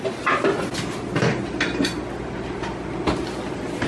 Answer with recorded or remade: recorded